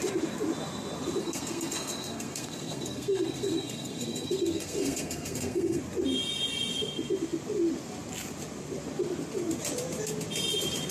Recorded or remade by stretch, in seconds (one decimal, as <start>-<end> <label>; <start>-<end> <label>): 0.0-1.2 recorded; 1.2-5.8 remade; 5.8-10.9 recorded